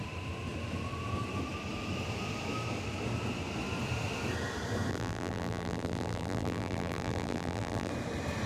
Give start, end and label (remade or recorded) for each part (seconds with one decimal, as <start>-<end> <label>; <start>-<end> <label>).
0.0-4.9 recorded; 4.9-7.9 remade; 7.9-8.5 recorded